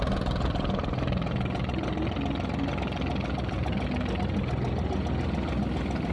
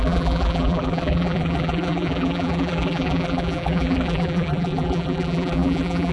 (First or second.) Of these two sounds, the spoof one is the second